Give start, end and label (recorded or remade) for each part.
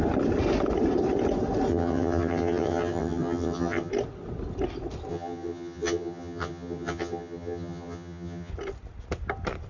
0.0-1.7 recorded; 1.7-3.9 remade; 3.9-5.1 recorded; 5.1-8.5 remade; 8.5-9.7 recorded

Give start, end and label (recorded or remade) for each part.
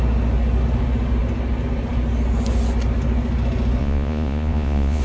0.0-3.8 recorded; 3.8-5.0 remade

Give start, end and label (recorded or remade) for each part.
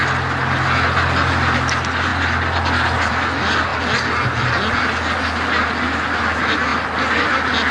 0.0-7.7 recorded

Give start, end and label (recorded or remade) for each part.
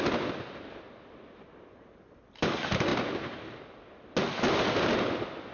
0.0-5.5 recorded